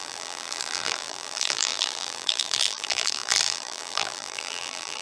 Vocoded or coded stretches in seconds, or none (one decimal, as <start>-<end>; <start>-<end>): 0.0-5.0